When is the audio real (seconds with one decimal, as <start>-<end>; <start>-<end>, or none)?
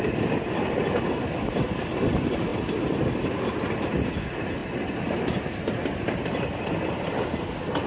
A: 0.0-7.9